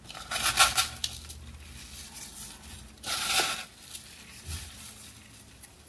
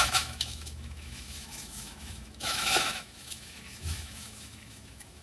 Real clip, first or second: first